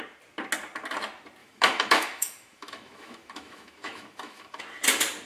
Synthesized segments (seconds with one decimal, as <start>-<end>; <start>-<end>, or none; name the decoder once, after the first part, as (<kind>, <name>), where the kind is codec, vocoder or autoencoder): 1.4-4.6 (autoencoder, DAC-VAE)